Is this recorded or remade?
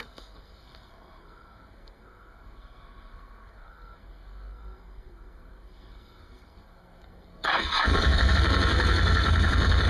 remade